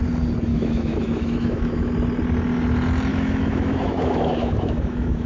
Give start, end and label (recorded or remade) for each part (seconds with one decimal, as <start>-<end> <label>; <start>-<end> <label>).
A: 0.0-0.5 recorded; 0.5-1.9 remade; 1.9-3.1 recorded; 3.1-5.3 remade